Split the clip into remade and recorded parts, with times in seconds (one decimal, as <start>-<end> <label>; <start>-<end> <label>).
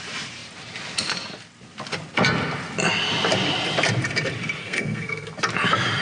0.0-4.6 recorded; 4.6-5.3 remade; 5.3-6.0 recorded